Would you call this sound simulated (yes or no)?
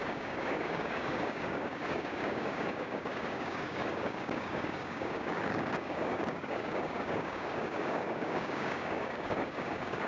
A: yes